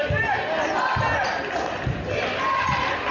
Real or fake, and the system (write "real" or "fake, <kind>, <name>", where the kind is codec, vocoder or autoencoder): real